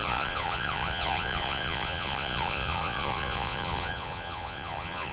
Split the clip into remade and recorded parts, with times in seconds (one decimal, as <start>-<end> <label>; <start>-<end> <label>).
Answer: 0.0-5.1 remade